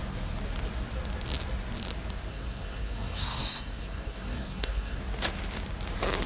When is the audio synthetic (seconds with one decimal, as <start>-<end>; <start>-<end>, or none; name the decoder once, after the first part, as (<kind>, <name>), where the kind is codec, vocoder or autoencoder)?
2.3-5.0 (codec, SNAC)